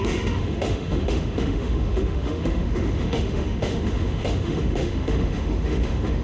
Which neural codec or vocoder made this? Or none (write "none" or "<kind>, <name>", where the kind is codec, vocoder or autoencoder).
autoencoder, DAC-VAE